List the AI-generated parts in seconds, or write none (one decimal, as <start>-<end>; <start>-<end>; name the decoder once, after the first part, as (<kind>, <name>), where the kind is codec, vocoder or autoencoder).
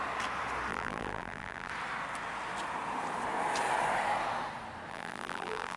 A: 0.7-1.7 (vocoder, BigVGAN v2); 4.9-5.8